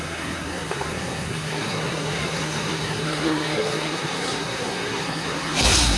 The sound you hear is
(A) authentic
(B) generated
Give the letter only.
B